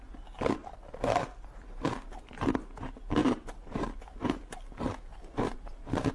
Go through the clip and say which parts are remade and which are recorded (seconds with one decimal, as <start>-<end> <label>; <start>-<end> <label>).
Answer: 0.0-0.6 recorded; 0.6-1.2 remade; 1.2-3.2 recorded; 3.2-4.0 remade; 4.0-5.1 recorded; 5.1-6.1 remade